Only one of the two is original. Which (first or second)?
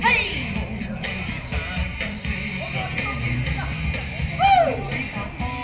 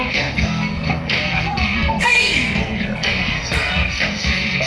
first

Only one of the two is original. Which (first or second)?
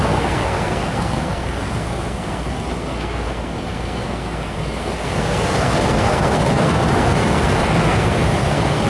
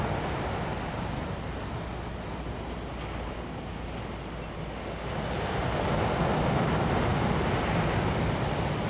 second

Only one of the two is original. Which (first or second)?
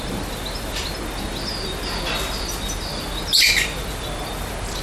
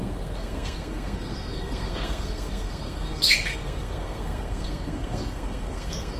first